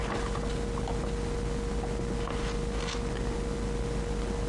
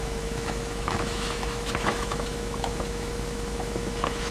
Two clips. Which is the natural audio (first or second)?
first